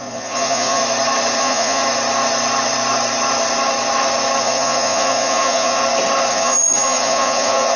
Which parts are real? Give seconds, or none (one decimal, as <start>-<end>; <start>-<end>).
0.8-1.4; 1.8-4.4; 5.8-6.3